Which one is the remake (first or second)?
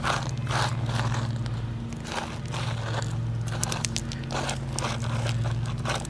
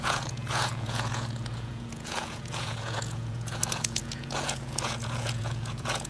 second